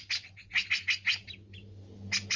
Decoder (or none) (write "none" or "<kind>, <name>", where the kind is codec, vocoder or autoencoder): none